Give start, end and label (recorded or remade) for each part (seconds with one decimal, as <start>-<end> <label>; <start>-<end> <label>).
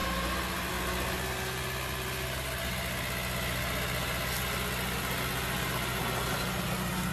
0.0-7.1 recorded